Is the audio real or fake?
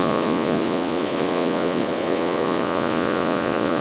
fake